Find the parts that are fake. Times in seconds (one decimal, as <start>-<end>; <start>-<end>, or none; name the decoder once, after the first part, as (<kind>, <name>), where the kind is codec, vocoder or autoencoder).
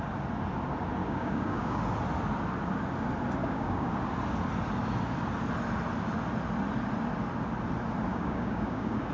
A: 1.0-1.8 (codec, DAC); 3.4-3.9; 8.1-9.1